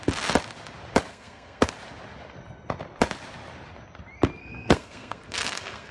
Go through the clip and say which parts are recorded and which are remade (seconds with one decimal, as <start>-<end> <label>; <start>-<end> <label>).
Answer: 0.0-1.1 recorded; 1.1-1.7 remade; 1.7-4.4 recorded; 4.4-5.9 remade